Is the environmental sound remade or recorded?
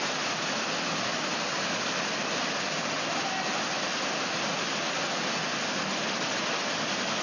recorded